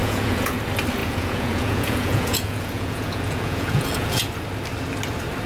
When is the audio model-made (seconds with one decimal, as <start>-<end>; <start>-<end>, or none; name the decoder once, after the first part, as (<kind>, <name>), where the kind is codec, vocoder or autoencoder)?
0.0-0.6 (vocoder, Vocos); 1.0-4.3